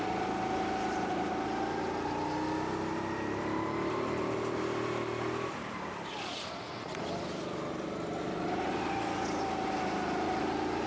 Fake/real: real